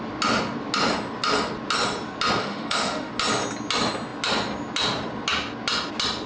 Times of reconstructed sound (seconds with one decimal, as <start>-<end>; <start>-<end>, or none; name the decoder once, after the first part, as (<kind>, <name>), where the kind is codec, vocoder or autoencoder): 2.4-3.1 (autoencoder, DAC-VAE)

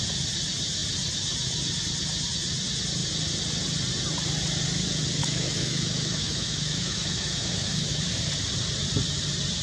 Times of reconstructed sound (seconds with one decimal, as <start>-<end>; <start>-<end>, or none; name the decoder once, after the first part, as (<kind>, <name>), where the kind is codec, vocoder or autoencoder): 5.2-8.0 (autoencoder, DAC-VAE)